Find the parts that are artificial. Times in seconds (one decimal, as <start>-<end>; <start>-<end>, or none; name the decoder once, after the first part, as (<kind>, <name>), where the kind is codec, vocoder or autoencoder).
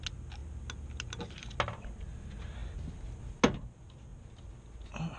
none